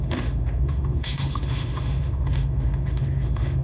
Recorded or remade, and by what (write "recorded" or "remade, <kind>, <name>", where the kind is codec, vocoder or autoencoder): remade, autoencoder, DAC-VAE